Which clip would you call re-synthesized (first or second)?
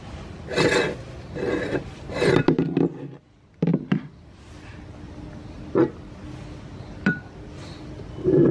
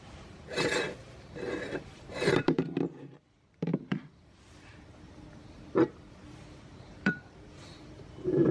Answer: second